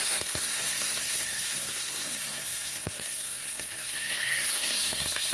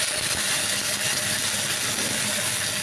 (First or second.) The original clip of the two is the second